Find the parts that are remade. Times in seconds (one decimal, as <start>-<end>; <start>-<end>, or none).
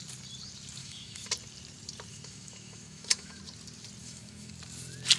0.8-1.3; 2.1-3.4; 4.0-4.5